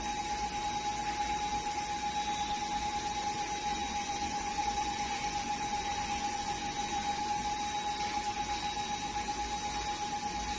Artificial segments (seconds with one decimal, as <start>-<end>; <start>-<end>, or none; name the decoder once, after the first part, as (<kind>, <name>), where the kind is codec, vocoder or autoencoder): 3.7-7.2 (vocoder, Vocos)